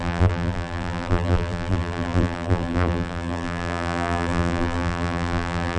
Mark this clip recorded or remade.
remade